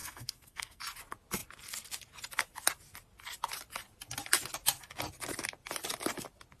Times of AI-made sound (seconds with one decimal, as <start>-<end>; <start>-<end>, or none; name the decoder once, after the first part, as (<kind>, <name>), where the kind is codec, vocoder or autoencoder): 0.0-0.8 (codec, SNAC)